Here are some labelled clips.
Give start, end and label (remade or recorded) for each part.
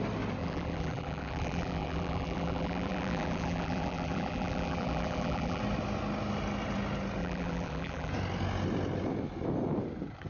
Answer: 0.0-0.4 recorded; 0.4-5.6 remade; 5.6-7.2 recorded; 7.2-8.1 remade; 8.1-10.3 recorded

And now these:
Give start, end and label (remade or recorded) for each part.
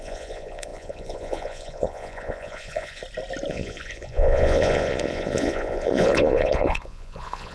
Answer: 0.0-3.0 remade; 3.0-3.5 recorded; 3.5-7.5 remade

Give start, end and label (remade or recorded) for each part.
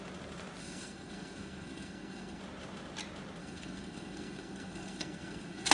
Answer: 0.0-0.6 recorded; 0.6-2.4 remade; 2.4-3.4 recorded; 3.4-5.7 remade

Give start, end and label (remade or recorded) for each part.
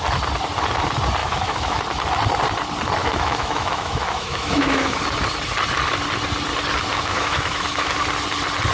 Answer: 0.0-1.2 recorded; 1.2-1.8 remade; 1.8-3.0 recorded; 3.0-5.0 remade; 5.0-6.9 recorded; 6.9-7.9 remade; 7.9-8.7 recorded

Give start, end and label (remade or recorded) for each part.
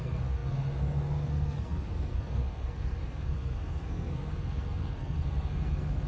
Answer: 0.0-6.1 remade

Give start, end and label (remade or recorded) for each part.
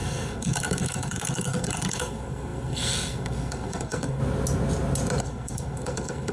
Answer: 0.0-4.2 remade; 4.2-5.2 recorded; 5.2-6.3 remade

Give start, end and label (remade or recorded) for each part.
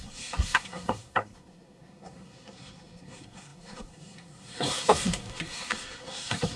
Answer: 0.0-6.6 remade